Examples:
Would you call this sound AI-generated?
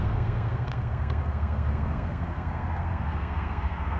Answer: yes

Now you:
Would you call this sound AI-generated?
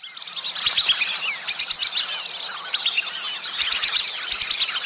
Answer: no